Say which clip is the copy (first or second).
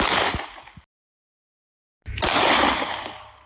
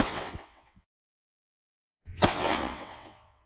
second